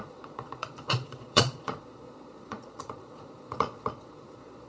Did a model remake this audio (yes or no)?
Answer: yes